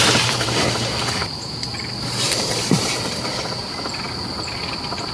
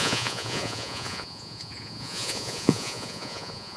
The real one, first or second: first